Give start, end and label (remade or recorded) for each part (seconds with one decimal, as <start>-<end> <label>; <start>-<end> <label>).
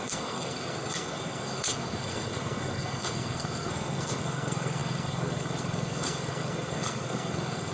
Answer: 0.0-7.7 remade